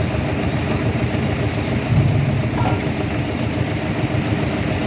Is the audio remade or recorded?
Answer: recorded